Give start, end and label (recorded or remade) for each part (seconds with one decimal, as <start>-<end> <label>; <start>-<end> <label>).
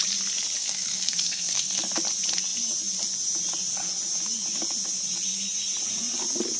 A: 0.0-0.6 recorded; 0.6-1.8 remade; 1.8-6.6 recorded